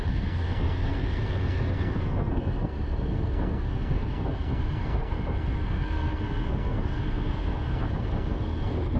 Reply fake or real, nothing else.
fake